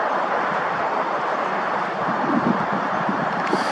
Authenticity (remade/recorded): recorded